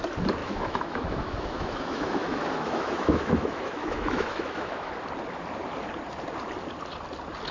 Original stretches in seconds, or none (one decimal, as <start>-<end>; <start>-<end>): 0.0-0.4; 4.9-7.5